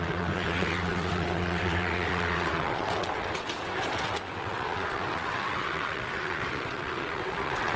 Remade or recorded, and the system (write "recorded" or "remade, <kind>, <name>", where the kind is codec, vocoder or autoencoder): remade, vocoder, WaveNeXt